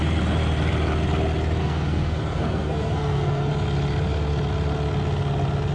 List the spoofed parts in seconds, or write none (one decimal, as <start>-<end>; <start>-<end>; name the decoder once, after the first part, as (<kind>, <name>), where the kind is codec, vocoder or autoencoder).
1.6-3.5 (codec, SNAC)